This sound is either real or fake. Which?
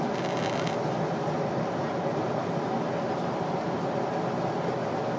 real